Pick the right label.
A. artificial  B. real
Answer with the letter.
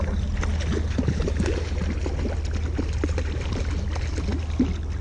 B